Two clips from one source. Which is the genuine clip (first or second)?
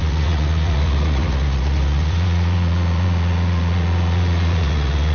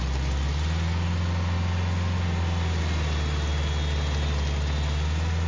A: second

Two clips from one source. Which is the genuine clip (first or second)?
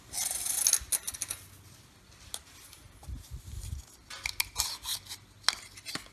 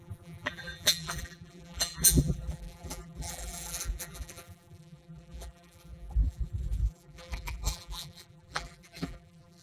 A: first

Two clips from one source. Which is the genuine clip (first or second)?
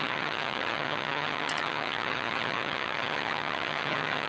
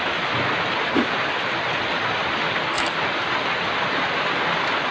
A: second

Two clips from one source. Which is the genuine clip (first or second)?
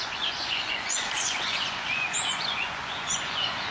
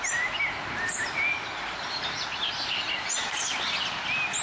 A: second